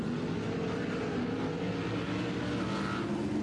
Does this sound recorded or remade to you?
recorded